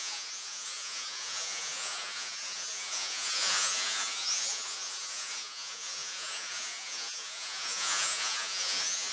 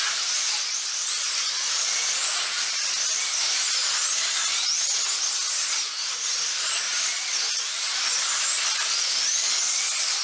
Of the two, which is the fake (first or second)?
first